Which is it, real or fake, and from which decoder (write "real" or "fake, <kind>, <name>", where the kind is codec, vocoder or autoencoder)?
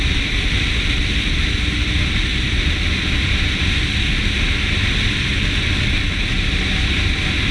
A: real